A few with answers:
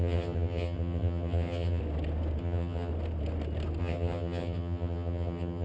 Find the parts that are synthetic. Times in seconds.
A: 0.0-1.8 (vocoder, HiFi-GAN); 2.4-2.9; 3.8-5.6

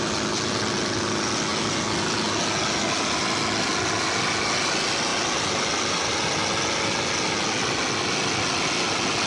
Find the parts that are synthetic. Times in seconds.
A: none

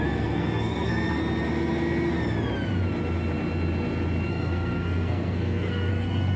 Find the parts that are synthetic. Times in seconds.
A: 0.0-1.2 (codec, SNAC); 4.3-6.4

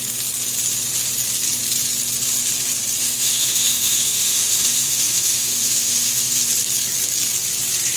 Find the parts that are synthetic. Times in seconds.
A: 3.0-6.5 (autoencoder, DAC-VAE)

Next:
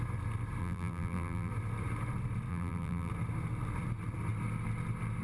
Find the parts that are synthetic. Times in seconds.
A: 0.6-1.5 (vocoder, BigVGAN v2); 2.5-3.1

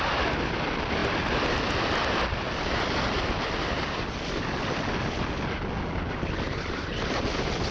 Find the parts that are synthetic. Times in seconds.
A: none